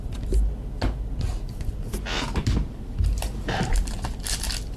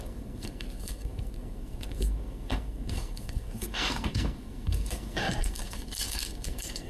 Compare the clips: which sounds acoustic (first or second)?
first